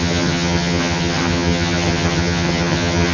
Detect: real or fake fake